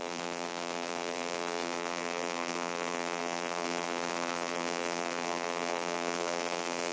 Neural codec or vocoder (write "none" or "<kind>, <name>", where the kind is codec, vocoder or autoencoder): vocoder, BigVGAN v2